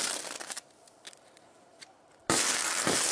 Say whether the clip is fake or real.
real